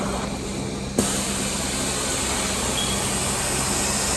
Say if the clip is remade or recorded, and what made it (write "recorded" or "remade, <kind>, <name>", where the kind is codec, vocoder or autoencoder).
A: recorded